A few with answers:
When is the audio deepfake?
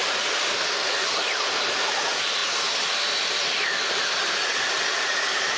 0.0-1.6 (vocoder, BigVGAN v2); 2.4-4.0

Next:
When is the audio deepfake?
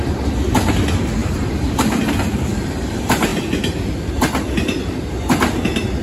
1.2-2.9 (vocoder, BigVGAN v2)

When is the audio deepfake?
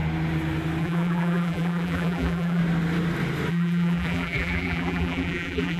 0.8-2.6 (vocoder, BigVGAN v2); 3.5-5.8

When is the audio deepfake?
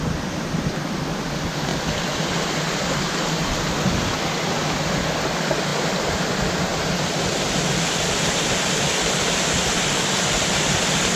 none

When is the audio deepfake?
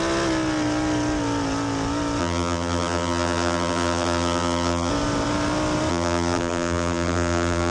2.2-4.9 (vocoder, BigVGAN v2); 5.9-7.7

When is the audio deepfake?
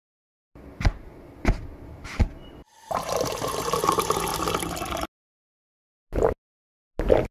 none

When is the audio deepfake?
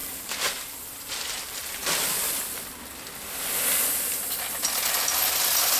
0.0-2.3 (vocoder, BigVGAN v2)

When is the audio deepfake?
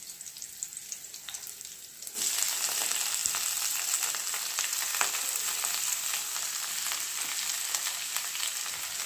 0.8-1.7 (vocoder, BigVGAN v2)